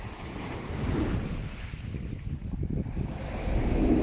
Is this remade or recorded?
recorded